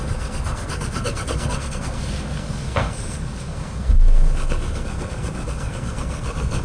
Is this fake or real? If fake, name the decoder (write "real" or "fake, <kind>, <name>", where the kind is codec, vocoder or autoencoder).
fake, codec, SNAC